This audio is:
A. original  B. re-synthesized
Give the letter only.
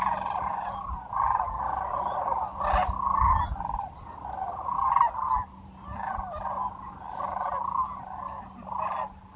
A